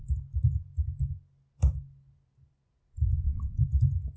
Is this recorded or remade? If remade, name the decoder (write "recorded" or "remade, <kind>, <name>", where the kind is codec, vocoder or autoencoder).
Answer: recorded